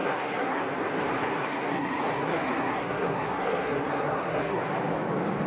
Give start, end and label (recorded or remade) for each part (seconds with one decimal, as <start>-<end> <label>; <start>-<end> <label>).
0.0-0.6 remade; 0.6-1.3 recorded; 1.3-4.6 remade; 4.6-5.5 recorded